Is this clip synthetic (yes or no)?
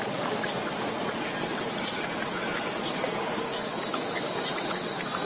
no